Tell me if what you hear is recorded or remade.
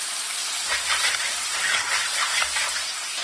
recorded